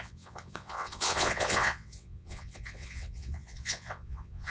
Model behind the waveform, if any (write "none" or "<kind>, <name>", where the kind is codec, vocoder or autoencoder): vocoder, WaveNeXt